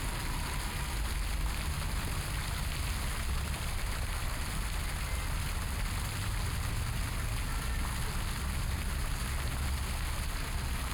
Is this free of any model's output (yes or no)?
yes